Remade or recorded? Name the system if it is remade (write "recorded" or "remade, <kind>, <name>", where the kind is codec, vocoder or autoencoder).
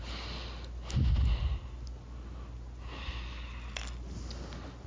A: recorded